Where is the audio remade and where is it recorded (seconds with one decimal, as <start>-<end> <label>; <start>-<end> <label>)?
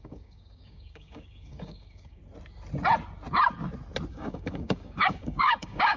0.0-2.2 remade; 2.2-4.1 recorded; 4.1-6.0 remade